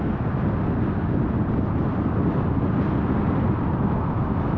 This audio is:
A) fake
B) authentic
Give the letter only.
B